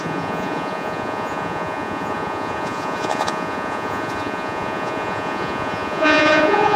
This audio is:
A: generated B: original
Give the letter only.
A